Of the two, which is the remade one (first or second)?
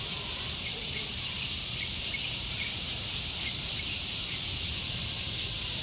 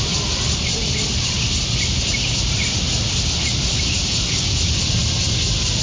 first